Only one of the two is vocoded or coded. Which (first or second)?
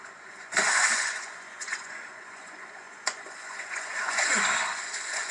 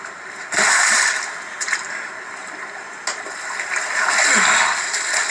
first